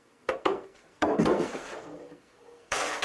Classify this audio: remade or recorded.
remade